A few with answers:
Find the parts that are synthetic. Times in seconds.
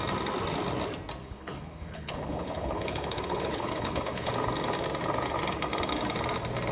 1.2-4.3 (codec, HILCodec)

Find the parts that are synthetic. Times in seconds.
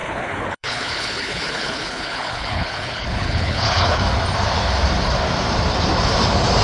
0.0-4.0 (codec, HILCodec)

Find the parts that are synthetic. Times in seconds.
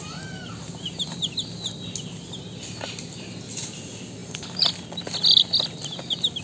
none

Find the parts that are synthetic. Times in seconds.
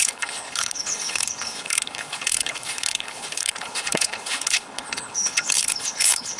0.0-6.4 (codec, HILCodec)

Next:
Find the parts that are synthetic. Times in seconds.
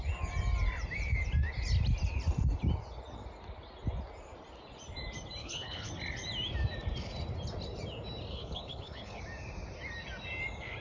5.4-5.9 (codec, HILCodec); 8.3-9.2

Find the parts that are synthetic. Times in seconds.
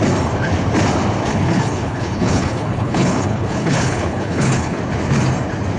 1.3-4.8 (codec, HILCodec)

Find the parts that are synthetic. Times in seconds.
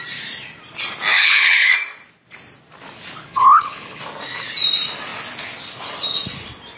1.1-1.7 (codec, HILCodec); 3.2-4.0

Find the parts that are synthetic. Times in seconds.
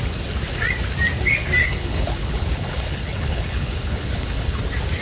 1.6-4.6 (codec, HILCodec)